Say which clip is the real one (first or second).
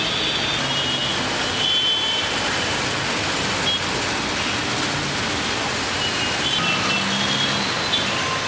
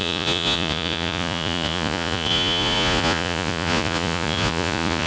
first